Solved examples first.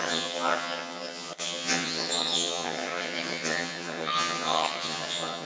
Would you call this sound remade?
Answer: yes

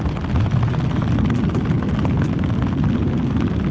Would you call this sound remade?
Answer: no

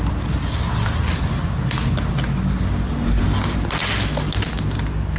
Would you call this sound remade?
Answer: no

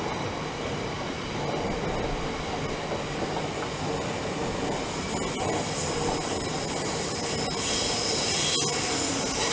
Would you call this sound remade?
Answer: no